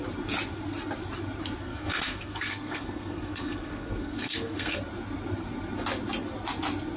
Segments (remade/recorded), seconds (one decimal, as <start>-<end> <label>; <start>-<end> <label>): 0.0-1.6 recorded; 1.6-4.8 remade; 4.8-7.0 recorded